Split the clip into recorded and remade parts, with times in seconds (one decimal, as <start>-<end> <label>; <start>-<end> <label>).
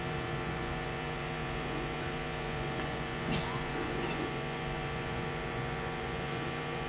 0.0-6.9 remade